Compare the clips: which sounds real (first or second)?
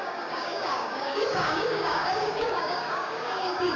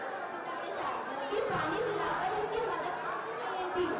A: second